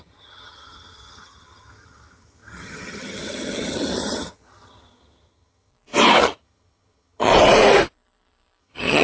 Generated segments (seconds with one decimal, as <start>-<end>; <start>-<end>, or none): 0.0-5.7; 6.2-7.3; 8.6-9.0